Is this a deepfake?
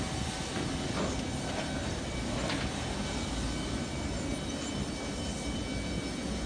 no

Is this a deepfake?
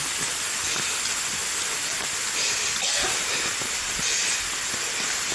no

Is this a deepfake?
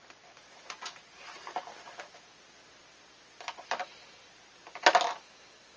no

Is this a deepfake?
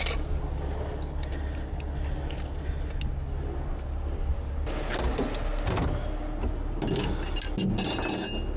no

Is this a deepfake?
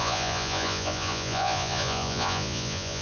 yes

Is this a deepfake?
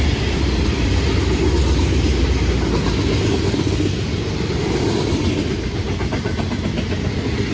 no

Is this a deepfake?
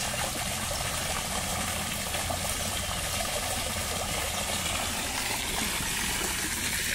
no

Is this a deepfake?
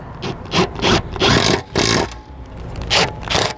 no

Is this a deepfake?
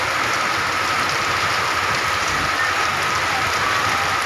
no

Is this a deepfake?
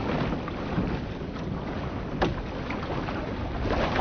no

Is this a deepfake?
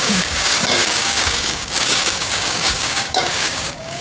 yes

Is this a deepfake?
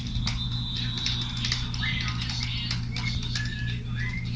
no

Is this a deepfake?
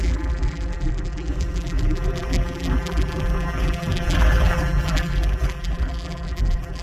yes